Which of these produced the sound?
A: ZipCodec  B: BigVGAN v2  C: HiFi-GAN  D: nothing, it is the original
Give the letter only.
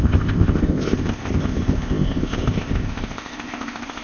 A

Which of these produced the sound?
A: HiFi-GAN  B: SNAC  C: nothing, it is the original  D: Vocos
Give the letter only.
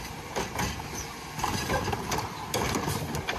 C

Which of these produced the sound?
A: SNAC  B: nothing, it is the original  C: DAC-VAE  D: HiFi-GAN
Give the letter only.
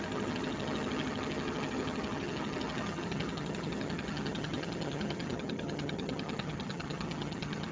D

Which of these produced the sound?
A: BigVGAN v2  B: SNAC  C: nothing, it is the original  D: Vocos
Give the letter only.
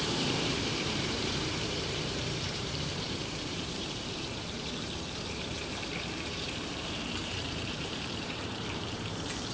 A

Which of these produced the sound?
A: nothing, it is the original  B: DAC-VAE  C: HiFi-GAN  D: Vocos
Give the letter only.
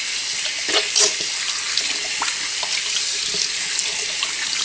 A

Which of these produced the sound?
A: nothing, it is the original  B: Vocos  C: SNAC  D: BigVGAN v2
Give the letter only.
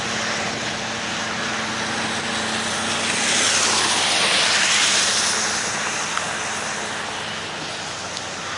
A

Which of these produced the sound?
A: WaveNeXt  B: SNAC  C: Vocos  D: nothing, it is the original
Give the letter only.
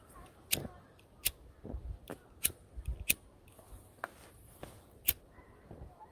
D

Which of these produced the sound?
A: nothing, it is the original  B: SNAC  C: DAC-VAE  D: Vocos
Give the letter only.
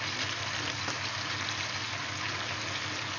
A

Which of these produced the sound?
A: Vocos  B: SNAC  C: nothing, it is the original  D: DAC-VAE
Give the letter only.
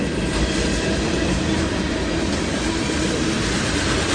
C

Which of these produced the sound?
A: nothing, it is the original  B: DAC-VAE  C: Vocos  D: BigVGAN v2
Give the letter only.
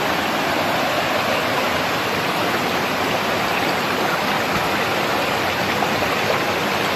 A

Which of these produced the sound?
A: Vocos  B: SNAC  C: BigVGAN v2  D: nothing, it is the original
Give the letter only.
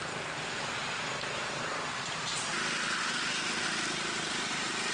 D